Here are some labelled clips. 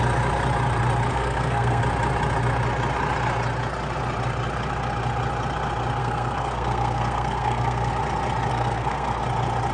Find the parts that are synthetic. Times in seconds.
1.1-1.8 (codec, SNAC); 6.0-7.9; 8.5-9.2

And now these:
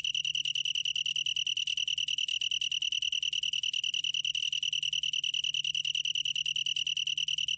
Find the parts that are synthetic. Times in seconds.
none

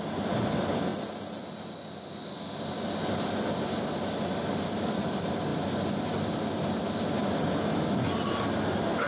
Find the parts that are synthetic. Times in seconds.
none